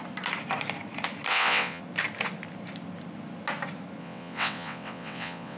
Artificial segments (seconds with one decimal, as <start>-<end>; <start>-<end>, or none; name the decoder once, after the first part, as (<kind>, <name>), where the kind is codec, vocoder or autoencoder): 1.3-1.8 (vocoder, WaveNeXt); 4.0-5.6